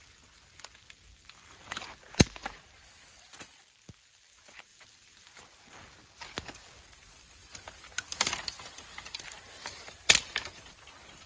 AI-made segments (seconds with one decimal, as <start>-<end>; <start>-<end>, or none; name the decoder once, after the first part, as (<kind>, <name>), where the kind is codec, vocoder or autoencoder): none